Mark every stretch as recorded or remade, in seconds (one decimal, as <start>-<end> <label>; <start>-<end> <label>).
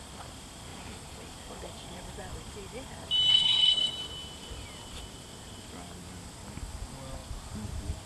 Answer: 0.0-3.3 recorded; 3.3-3.9 remade; 3.9-8.1 recorded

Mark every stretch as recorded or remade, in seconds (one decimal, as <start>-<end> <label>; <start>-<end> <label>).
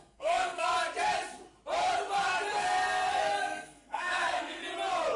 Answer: 0.0-0.7 remade; 0.7-3.1 recorded; 3.1-4.6 remade; 4.6-5.2 recorded